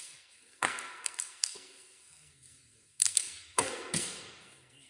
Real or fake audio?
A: fake